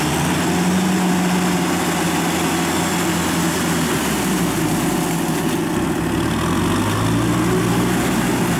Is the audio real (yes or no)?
yes